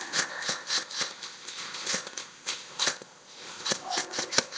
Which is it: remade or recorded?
remade